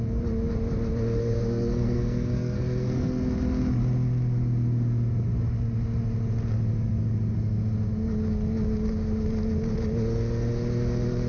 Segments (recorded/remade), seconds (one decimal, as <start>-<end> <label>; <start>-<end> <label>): 0.0-1.2 recorded; 1.2-3.3 remade; 3.3-11.3 recorded